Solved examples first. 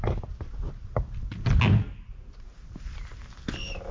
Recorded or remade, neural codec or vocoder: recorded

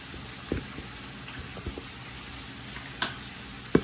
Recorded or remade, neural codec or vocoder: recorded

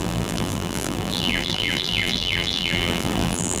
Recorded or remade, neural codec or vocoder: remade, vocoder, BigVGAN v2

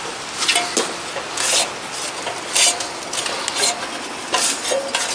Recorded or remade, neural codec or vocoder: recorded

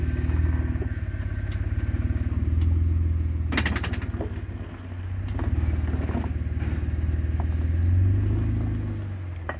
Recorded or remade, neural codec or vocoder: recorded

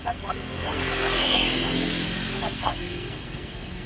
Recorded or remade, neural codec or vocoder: remade, codec, SNAC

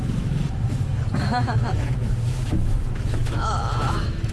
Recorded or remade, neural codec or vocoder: remade, autoencoder, DAC-VAE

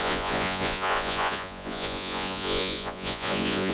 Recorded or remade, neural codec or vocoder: remade, vocoder, Vocos